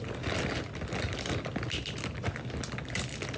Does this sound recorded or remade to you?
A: recorded